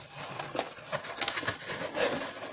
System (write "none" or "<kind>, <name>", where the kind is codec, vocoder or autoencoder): none